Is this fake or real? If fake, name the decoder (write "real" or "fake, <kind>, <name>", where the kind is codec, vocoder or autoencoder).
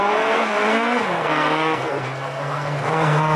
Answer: fake, codec, SNAC